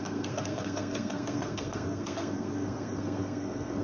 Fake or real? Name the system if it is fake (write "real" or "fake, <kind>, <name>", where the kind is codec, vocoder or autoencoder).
fake, codec, SNAC